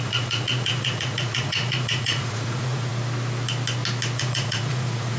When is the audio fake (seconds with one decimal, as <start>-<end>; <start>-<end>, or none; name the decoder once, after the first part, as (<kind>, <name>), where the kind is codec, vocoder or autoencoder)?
0.0-2.9 (vocoder, Vocos); 4.2-5.2

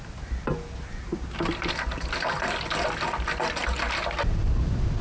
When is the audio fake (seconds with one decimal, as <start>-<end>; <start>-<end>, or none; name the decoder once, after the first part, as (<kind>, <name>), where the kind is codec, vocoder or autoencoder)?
none

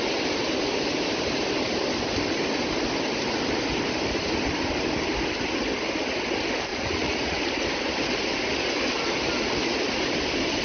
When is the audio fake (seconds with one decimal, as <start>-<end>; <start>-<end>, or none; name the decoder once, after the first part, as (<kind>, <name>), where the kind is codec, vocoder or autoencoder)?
6.7-7.4 (vocoder, Vocos)

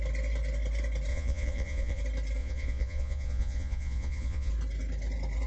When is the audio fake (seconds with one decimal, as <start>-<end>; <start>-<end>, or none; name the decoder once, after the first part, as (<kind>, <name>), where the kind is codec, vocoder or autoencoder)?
1.1-2.0 (vocoder, Vocos); 2.4-4.5

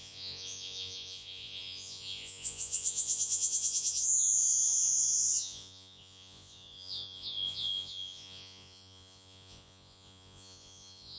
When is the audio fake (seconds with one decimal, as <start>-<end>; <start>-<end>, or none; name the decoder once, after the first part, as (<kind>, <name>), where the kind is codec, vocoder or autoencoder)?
0.0-11.2 (vocoder, Vocos)

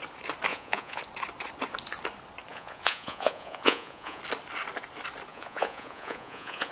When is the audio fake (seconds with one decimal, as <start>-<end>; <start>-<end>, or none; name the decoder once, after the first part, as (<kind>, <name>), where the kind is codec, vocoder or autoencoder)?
0.5-1.0 (vocoder, Vocos); 2.5-4.2; 5.3-6.7